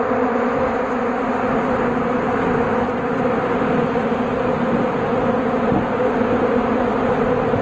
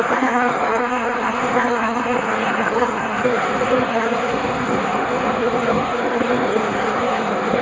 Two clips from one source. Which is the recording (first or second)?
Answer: first